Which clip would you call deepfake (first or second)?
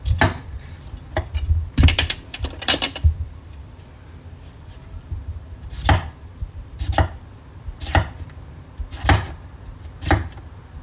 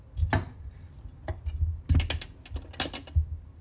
first